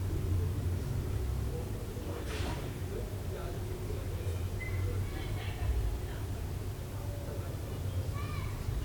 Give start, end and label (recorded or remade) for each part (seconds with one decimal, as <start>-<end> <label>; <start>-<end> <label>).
0.0-8.8 recorded